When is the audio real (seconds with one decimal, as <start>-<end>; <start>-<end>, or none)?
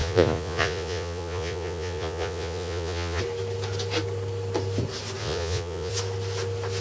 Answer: 3.2-5.2; 5.9-6.8